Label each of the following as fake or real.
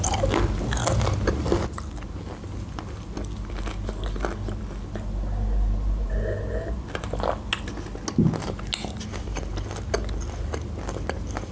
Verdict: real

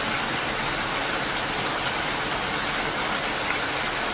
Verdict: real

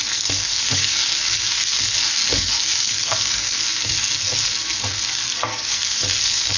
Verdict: fake